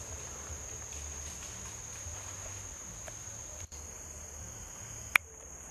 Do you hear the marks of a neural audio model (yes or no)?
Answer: no